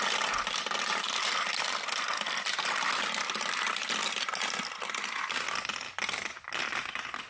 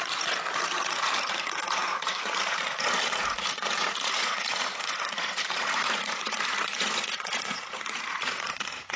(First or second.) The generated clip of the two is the second